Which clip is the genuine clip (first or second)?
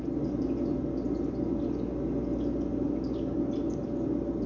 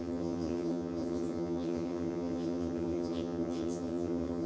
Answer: first